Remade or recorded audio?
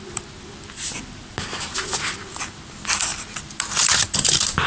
recorded